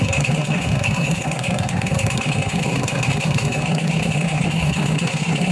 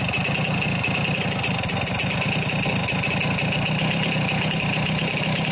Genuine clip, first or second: second